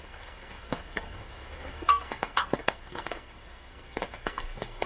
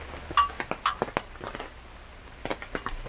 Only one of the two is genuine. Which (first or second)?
second